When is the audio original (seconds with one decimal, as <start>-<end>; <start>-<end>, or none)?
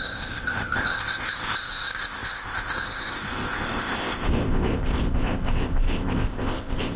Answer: none